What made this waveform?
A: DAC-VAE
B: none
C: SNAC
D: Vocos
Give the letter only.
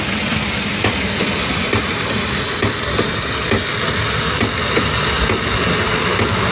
B